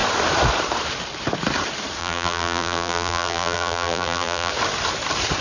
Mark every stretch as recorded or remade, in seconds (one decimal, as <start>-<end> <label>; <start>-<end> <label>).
0.0-2.0 recorded; 2.0-4.5 remade; 4.5-5.4 recorded